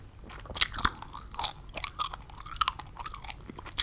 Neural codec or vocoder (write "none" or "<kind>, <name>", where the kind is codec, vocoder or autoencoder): none